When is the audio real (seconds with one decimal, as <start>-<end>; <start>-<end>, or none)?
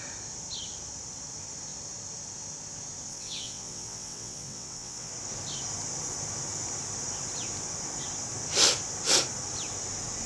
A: 0.0-3.1; 5.1-10.3